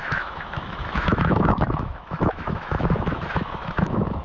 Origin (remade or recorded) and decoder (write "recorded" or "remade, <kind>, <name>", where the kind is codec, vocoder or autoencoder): remade, autoencoder, DAC-VAE